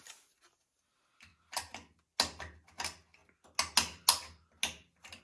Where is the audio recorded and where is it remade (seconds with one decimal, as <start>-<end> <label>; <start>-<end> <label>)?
0.0-5.2 recorded